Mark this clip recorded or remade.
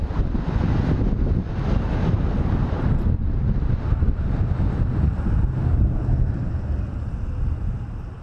recorded